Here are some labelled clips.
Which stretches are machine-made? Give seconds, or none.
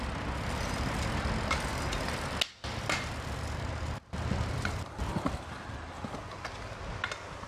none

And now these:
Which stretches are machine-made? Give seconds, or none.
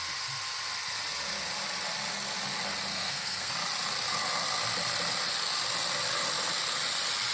2.9-3.5 (codec, SNAC)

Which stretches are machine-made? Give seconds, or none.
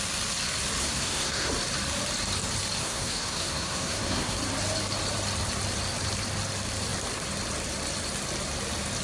0.8-1.5 (codec, SNAC); 2.8-4.4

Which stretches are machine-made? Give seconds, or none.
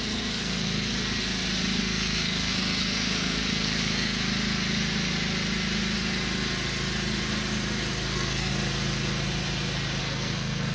0.0-0.9 (codec, SNAC); 1.8-4.2; 8.1-8.5; 10.0-10.7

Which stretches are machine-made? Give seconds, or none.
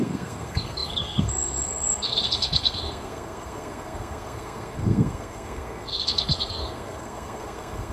0.0-7.9 (codec, SNAC)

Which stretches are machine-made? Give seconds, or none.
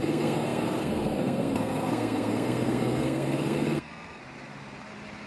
0.0-4.2 (codec, SNAC)